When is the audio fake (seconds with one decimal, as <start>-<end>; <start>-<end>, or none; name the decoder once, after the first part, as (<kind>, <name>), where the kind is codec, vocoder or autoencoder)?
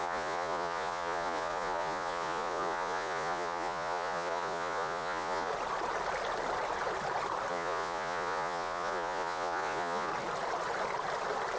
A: 0.0-5.5 (vocoder, Vocos); 7.5-10.1